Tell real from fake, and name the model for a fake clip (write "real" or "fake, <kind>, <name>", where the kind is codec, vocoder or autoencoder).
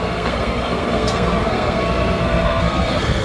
fake, codec, SNAC